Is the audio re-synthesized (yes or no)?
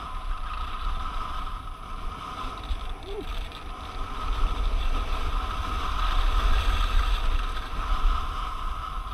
no